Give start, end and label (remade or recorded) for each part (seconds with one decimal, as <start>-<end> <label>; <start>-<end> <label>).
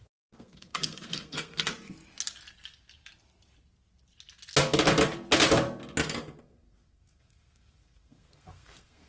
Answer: 0.0-1.7 remade; 1.7-6.4 recorded; 6.4-9.1 remade